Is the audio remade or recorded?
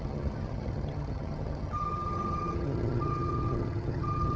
remade